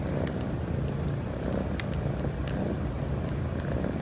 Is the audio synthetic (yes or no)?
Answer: no